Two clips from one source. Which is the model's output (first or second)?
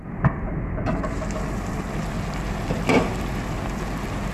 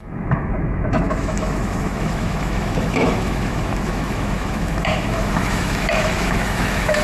second